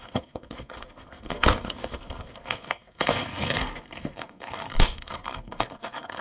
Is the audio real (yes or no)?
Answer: no